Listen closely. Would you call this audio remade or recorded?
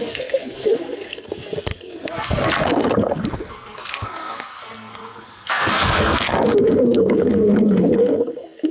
remade